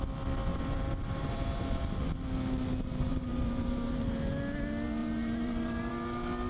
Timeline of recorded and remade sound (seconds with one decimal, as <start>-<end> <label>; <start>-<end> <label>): 0.0-0.5 recorded; 0.5-1.8 remade; 1.8-3.1 recorded; 3.1-4.1 remade; 4.1-5.0 recorded; 5.0-5.9 remade; 5.9-6.5 recorded